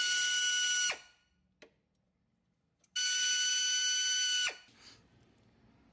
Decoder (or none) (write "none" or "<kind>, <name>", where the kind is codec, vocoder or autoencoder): none